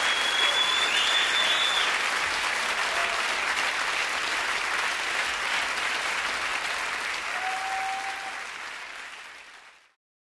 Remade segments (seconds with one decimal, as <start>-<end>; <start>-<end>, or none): 0.0-6.5; 8.7-10.2